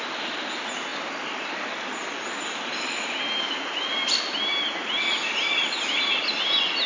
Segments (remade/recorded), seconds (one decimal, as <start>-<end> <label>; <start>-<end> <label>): 0.0-6.9 recorded